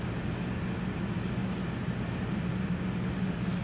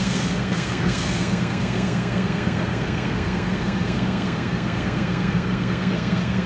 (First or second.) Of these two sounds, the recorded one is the first